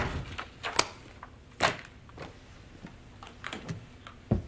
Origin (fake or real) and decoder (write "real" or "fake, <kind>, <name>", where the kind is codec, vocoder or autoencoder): real